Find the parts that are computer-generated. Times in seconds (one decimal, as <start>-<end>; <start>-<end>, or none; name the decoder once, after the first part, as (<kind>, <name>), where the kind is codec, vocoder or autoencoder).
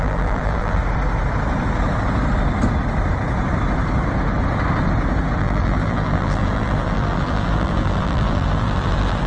0.0-0.8 (vocoder, BigVGAN v2); 5.4-9.3